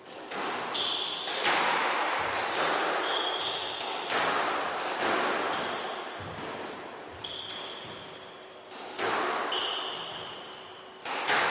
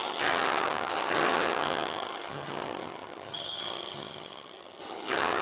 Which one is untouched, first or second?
first